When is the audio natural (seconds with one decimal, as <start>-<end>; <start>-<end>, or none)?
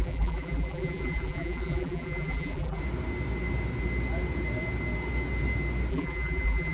2.8-5.9